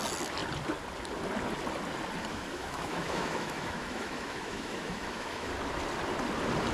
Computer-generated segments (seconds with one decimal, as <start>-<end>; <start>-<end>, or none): 2.3-5.5